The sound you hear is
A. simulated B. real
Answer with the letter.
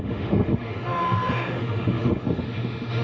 A